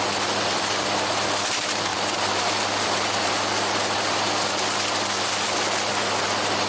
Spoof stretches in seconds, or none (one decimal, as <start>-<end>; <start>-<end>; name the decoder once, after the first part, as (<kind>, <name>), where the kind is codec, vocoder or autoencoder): 1.9-4.3 (vocoder, BigVGAN v2)